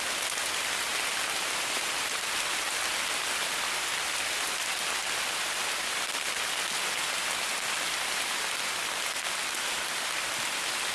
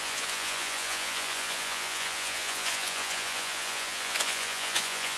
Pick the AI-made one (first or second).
second